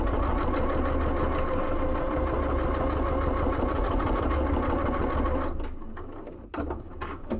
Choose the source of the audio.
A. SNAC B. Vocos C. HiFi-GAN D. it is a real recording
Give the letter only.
D